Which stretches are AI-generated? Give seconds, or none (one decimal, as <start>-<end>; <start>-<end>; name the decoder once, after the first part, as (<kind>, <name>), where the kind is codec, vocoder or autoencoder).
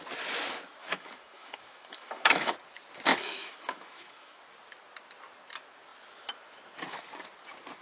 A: 0.8-2.5 (autoencoder, DAC-VAE); 3.1-4.4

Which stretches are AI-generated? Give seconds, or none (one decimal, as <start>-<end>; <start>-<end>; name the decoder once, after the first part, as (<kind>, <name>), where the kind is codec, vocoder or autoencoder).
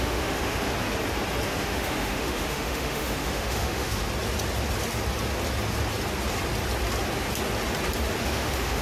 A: 0.0-0.7 (autoencoder, DAC-VAE); 1.5-4.0; 8.2-8.8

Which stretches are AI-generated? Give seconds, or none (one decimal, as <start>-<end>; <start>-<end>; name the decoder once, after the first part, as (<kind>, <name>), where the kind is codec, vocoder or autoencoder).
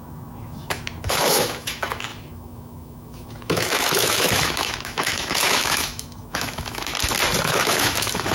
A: 0.0-6.9 (autoencoder, DAC-VAE); 7.4-8.3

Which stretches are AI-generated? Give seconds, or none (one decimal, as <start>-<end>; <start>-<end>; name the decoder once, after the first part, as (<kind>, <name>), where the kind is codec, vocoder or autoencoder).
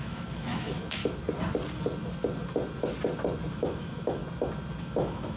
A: 0.0-1.0 (autoencoder, DAC-VAE); 3.5-4.2; 4.8-5.4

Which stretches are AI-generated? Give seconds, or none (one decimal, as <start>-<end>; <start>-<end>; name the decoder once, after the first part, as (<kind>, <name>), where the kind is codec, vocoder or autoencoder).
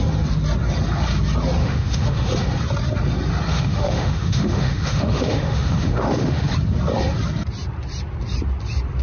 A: 1.6-2.3 (autoencoder, DAC-VAE); 3.5-6.5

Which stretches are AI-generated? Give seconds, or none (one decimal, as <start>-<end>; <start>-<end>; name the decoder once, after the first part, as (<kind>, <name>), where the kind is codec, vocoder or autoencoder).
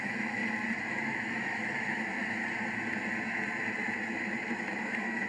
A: 0.0-0.4 (autoencoder, DAC-VAE); 1.0-2.2; 4.8-5.3